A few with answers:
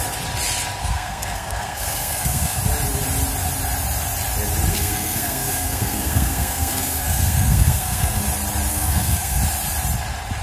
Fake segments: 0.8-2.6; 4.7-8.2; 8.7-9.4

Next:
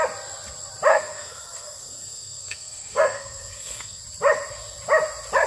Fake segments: 0.9-4.0

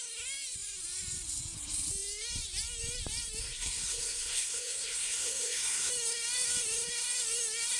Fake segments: 3.4-5.9

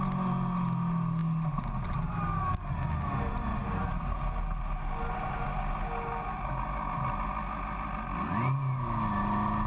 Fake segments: none

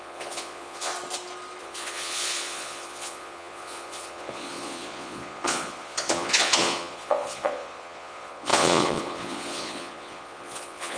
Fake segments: 0.0-0.9; 1.6-11.0

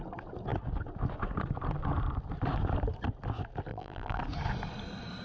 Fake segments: 3.7-4.2

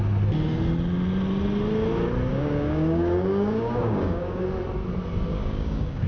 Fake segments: 2.3-4.4; 5.3-6.1

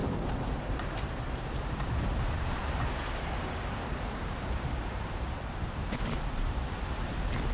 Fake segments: 0.0-1.9; 2.6-7.1